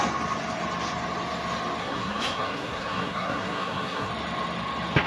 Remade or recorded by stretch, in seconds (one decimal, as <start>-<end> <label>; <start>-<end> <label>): 0.0-1.8 recorded; 1.8-4.1 remade; 4.1-5.1 recorded